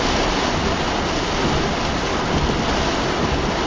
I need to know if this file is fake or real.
real